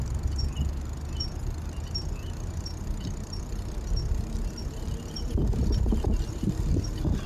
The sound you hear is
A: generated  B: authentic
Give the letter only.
B